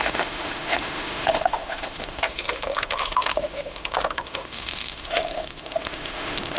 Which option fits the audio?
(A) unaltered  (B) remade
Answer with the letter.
B